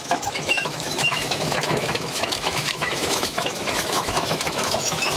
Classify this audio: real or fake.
fake